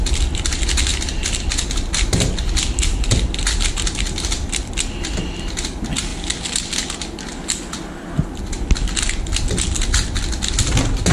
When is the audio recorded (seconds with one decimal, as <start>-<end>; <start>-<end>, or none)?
0.0-11.1